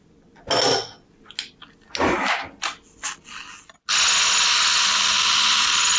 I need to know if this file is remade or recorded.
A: recorded